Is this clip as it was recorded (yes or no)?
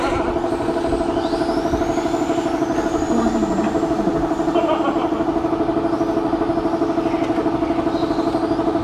yes